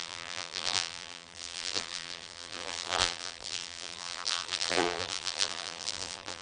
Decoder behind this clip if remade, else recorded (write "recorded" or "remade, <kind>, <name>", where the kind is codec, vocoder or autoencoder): remade, vocoder, BigVGAN v2